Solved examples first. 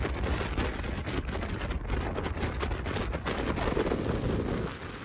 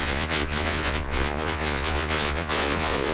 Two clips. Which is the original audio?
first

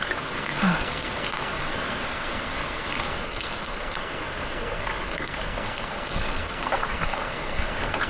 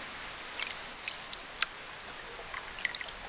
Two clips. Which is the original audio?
second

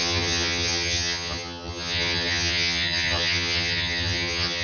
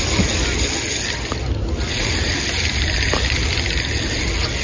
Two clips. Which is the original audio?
second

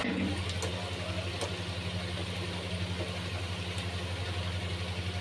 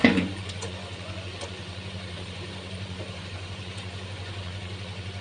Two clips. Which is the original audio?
first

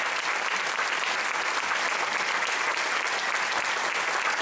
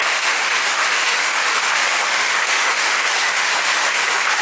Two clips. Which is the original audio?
first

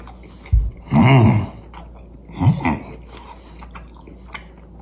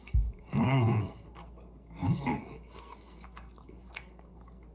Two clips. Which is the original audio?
first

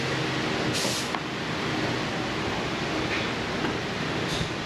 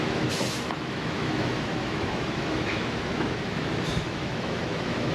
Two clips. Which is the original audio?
first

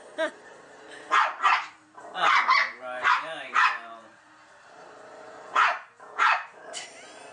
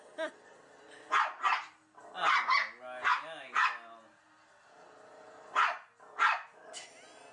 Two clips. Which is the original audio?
second